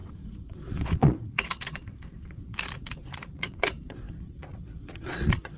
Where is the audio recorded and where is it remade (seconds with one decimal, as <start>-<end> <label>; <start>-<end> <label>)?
0.0-5.6 remade